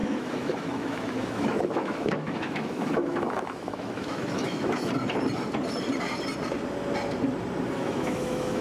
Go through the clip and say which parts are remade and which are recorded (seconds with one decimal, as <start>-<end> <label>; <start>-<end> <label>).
0.0-4.9 remade; 4.9-7.8 recorded; 7.8-8.6 remade